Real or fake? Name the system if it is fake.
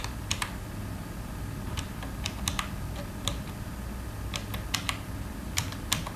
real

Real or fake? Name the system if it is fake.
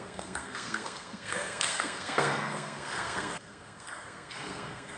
fake, codec, SNAC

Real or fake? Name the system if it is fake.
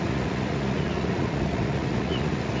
fake, vocoder, Vocos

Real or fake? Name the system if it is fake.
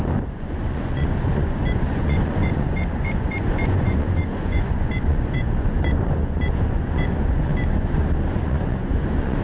fake, vocoder, Vocos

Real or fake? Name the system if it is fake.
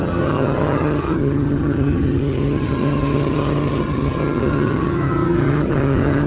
fake, vocoder, HiFi-GAN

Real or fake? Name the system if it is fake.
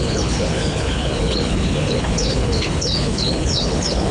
fake, codec, HILCodec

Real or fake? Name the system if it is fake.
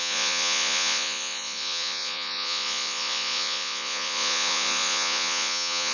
fake, vocoder, Vocos